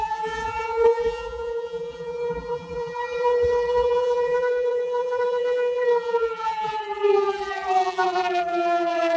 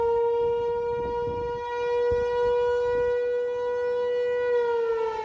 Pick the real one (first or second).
second